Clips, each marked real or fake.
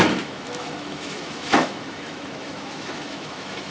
fake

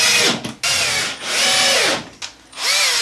real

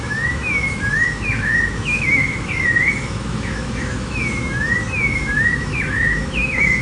fake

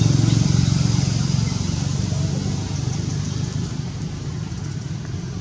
real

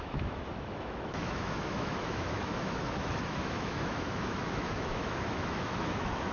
fake